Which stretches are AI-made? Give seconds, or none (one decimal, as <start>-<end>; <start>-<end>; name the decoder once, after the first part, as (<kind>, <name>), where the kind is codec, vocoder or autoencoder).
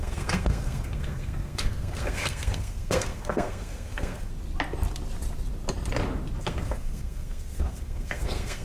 0.0-4.3 (codec, SNAC); 6.4-8.6